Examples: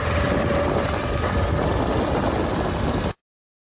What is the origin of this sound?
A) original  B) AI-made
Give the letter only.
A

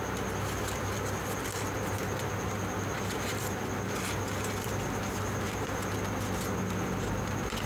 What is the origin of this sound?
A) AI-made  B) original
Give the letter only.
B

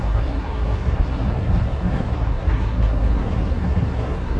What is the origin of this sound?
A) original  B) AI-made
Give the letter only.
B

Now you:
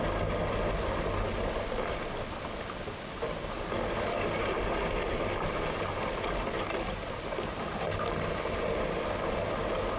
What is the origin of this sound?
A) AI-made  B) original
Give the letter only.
B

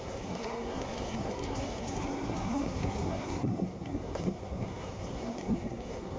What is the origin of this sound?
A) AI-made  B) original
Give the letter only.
A